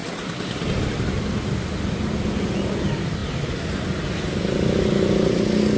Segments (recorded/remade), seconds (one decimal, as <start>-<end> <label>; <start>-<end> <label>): 0.0-5.8 recorded